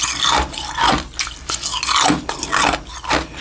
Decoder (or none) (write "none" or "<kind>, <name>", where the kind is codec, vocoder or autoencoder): none